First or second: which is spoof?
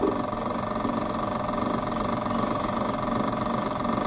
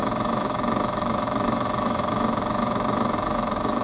second